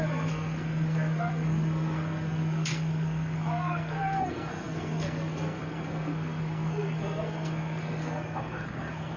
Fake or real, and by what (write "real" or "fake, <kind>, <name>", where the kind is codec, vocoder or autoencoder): fake, codec, SNAC